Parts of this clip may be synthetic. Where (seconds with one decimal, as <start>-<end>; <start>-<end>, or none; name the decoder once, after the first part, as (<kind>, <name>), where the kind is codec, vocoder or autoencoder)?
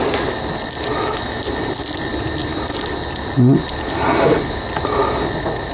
0.9-1.4 (autoencoder, DAC-VAE)